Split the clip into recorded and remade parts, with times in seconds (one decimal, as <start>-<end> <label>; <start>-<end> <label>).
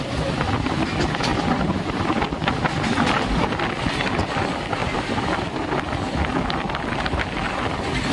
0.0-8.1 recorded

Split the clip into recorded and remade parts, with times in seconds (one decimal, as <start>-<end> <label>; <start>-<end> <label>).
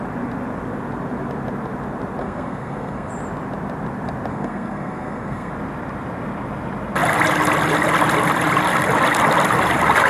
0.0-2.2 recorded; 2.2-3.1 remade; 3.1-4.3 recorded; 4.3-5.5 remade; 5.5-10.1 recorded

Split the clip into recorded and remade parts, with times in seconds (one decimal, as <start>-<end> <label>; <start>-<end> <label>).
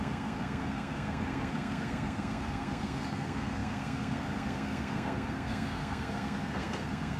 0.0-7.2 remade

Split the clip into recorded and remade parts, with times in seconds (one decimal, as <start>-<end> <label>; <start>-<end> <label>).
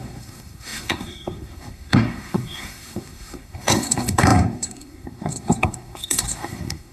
0.0-6.9 remade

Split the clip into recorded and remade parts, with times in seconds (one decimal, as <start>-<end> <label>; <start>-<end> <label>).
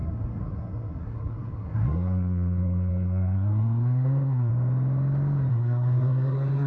0.0-4.5 remade; 4.5-5.5 recorded; 5.5-6.7 remade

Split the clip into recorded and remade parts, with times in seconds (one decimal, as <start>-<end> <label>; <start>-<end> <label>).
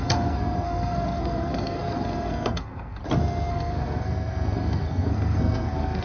0.0-3.0 remade; 3.0-3.5 recorded; 3.5-6.0 remade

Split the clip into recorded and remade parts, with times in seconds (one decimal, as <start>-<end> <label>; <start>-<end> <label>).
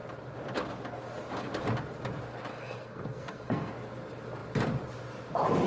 0.0-2.5 recorded; 2.5-3.7 remade; 3.7-5.7 recorded